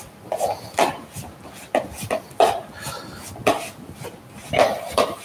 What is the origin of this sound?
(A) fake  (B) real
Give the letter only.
B